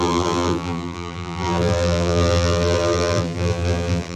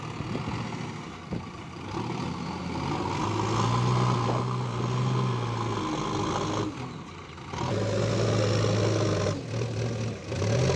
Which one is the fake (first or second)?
first